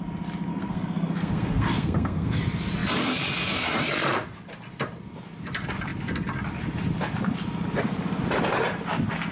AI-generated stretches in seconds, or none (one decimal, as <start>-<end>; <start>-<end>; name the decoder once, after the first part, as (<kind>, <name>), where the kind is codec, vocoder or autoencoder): 0.5-2.4 (codec, SNAC)